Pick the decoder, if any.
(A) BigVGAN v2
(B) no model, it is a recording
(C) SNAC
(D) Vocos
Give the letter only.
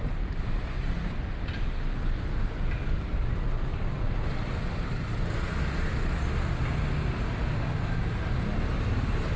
B